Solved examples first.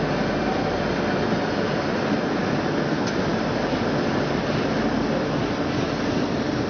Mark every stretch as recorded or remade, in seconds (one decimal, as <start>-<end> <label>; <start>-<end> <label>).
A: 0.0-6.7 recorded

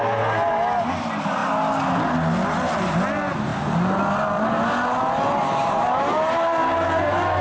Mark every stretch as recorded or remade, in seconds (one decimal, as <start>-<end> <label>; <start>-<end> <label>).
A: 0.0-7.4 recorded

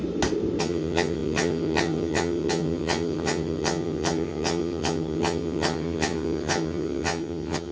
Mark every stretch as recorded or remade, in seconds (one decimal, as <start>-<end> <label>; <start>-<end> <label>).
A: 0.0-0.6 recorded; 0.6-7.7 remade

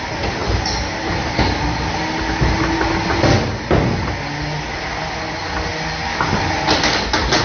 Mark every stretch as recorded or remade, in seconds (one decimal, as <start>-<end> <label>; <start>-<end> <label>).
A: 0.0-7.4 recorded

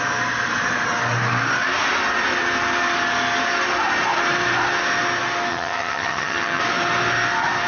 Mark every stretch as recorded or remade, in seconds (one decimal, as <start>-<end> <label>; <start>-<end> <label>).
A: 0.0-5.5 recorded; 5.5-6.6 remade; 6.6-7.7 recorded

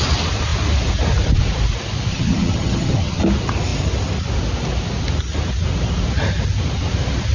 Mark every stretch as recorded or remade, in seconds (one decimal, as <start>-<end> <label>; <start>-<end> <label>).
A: 0.0-2.1 recorded; 2.1-3.2 remade; 3.2-7.3 recorded

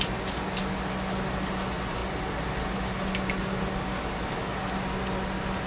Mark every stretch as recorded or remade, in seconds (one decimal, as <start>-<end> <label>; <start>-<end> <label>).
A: 0.0-5.7 recorded

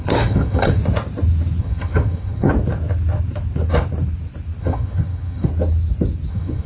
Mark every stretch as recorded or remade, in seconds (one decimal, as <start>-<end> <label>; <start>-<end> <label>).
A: 0.0-0.8 remade; 0.8-1.6 recorded; 1.6-2.5 remade; 2.5-4.6 recorded; 4.6-5.5 remade; 5.5-6.3 recorded; 6.3-6.7 remade